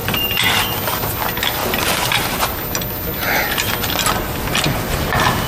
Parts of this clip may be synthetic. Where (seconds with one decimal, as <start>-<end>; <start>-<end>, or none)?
0.0-0.6; 1.6-2.6

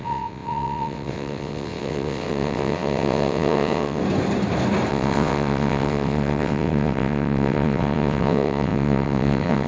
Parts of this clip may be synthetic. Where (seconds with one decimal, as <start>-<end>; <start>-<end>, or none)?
0.0-4.0; 4.9-9.7

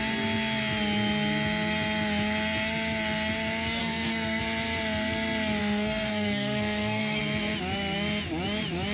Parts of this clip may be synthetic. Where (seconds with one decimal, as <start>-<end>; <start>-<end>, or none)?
3.8-4.4; 5.6-7.2

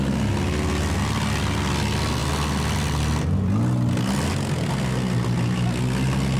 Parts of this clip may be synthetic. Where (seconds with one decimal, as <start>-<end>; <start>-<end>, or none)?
none

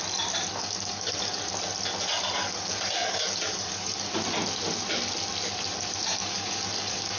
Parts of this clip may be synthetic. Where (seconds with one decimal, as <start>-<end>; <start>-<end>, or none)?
0.5-1.4; 2.4-4.1; 6.2-7.2